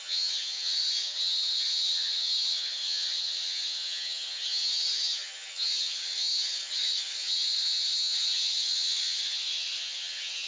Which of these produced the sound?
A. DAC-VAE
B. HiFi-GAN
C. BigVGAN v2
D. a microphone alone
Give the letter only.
B